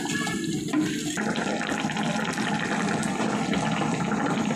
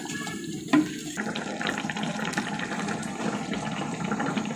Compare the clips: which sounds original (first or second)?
first